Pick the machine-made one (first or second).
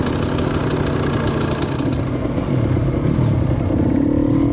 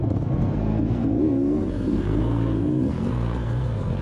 second